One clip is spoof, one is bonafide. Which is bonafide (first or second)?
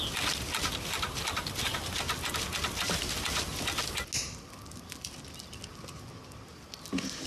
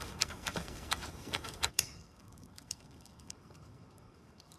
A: first